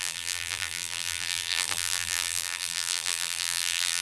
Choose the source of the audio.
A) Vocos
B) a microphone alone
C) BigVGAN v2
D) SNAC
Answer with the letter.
C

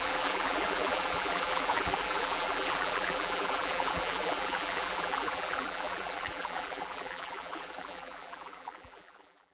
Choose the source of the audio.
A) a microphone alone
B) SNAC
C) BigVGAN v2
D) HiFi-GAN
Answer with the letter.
C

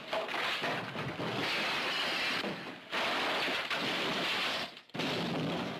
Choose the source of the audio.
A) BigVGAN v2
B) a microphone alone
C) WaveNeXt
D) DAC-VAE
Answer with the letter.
B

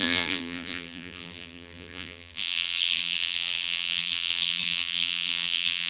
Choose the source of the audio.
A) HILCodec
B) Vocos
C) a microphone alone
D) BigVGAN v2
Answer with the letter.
D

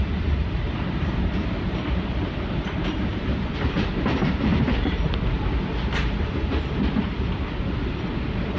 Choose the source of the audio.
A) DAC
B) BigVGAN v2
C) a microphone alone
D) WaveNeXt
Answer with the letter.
B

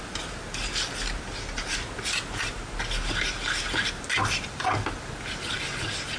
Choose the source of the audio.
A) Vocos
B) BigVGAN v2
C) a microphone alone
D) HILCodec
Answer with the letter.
C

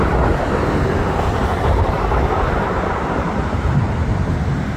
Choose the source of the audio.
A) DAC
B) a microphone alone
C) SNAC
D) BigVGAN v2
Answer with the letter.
D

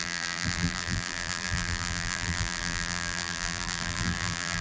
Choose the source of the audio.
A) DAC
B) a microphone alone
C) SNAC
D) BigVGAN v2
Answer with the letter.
D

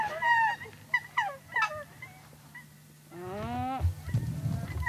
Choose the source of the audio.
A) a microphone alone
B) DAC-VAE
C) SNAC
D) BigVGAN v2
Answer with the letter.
A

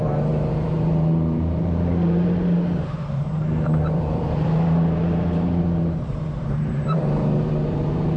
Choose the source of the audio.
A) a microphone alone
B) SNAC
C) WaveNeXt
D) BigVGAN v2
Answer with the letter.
D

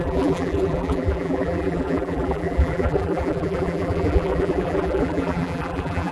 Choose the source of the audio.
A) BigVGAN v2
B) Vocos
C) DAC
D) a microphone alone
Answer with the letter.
A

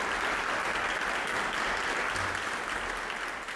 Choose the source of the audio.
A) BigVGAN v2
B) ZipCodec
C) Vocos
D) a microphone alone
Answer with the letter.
D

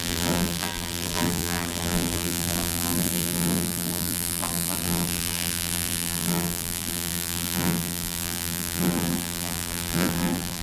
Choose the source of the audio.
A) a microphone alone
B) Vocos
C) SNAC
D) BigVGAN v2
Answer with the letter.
D